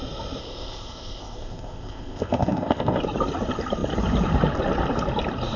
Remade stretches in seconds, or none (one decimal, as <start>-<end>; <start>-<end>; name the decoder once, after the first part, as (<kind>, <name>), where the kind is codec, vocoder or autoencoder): 0.4-3.0 (codec, ZipCodec)